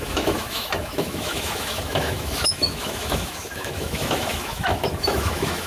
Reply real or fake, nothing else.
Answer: fake